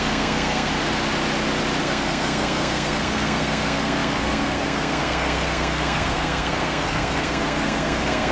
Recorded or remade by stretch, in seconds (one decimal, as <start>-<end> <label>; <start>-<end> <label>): 0.0-0.7 remade; 0.7-1.8 recorded; 1.8-8.3 remade